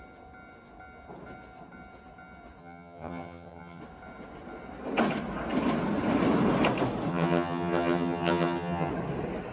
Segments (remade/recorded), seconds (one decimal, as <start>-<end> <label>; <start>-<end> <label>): 0.0-2.6 recorded; 2.6-3.8 remade; 3.8-7.1 recorded; 7.1-8.9 remade; 8.9-9.5 recorded

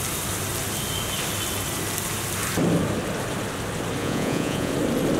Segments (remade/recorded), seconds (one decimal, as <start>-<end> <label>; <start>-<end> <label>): 0.0-4.0 recorded; 4.0-4.7 remade; 4.7-5.2 recorded

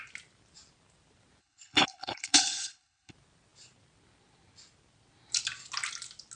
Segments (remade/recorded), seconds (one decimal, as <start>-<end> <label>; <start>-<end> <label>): 0.0-1.4 recorded; 1.4-3.1 remade; 3.1-6.4 recorded